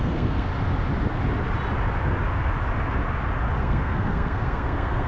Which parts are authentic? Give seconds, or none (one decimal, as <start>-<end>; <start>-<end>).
0.5-3.6